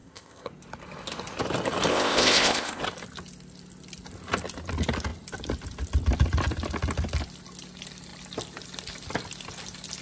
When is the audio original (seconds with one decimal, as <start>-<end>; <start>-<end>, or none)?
0.5-1.9; 2.8-10.0